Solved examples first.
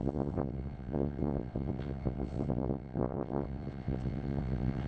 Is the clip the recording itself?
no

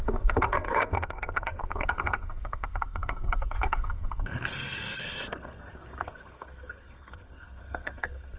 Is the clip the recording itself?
no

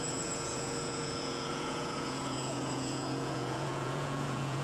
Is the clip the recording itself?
no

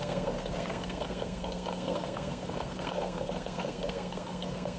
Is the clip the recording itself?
no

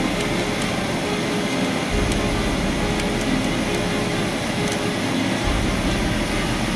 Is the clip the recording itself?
yes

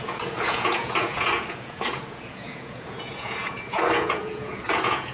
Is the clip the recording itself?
no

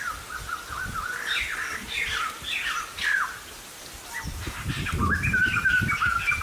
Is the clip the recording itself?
yes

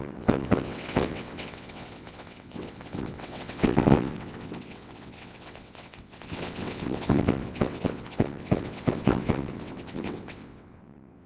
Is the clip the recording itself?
no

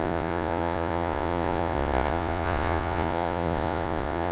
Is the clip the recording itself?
no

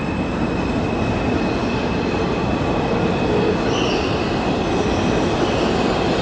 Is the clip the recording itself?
yes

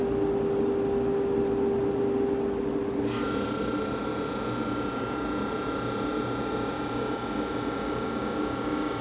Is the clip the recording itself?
yes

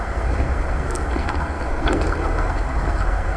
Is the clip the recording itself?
no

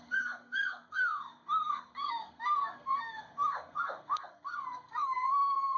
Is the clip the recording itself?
no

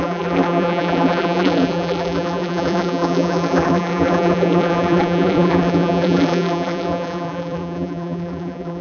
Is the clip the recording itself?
no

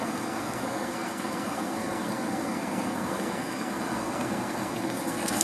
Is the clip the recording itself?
no